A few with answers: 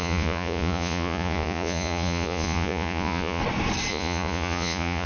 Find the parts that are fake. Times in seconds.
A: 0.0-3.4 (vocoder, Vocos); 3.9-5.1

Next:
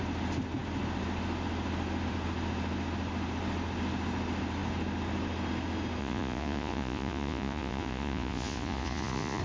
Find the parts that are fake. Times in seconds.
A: 6.0-9.4 (vocoder, Vocos)

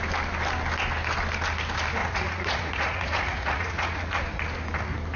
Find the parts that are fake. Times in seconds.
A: 2.0-4.2 (vocoder, Vocos)

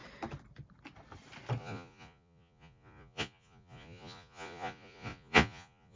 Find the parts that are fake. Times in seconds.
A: 1.6-6.0 (vocoder, Vocos)

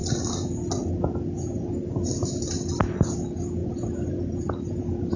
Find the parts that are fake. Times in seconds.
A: none

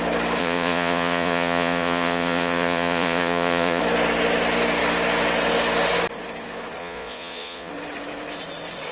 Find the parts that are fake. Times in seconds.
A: 0.4-3.8 (vocoder, Vocos); 6.8-7.7